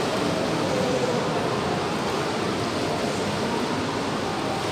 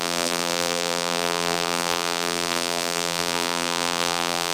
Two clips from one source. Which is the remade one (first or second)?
second